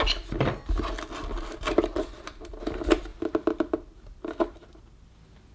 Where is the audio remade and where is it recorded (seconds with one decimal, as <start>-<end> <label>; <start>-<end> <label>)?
0.0-5.5 recorded